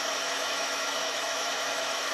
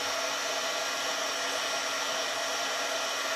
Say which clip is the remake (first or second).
first